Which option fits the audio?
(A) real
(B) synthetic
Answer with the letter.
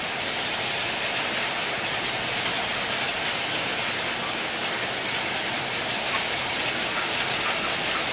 A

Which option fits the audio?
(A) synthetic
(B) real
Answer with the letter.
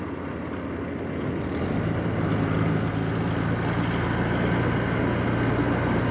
B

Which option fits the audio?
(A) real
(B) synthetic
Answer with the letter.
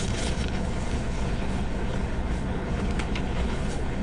B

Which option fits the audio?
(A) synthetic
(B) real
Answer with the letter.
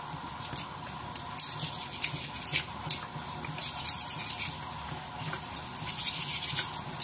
B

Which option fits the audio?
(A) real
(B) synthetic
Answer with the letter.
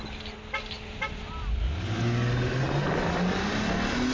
A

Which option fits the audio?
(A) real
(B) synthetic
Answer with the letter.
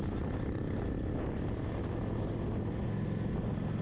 A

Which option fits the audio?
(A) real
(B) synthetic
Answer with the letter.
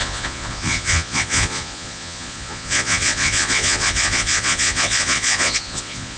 B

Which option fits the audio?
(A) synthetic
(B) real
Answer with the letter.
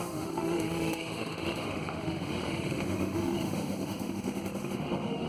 A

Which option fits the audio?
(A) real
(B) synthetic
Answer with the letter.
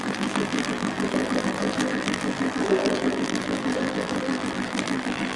B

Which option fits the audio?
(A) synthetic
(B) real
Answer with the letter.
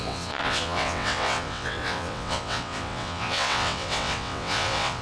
A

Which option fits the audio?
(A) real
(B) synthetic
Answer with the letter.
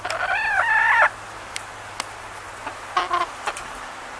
A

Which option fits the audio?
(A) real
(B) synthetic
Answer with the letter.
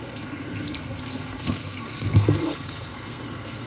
B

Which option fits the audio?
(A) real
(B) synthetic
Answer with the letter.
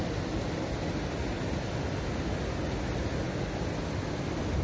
A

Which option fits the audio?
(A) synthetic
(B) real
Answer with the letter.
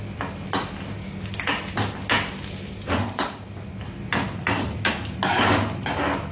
B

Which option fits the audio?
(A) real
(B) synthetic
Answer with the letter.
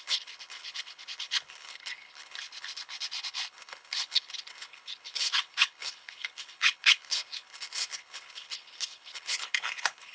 B